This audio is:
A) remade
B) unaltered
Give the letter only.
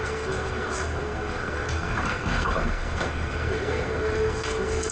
A